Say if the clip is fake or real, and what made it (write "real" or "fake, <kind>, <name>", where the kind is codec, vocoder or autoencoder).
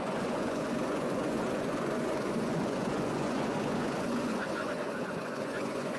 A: fake, vocoder, Vocos